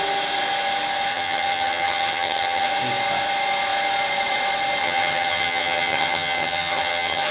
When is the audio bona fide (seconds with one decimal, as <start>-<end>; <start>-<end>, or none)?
0.0-1.1; 2.7-4.8